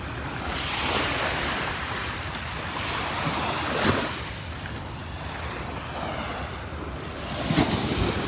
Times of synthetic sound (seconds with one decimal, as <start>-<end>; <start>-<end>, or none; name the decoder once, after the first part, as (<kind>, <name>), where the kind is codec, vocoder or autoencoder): none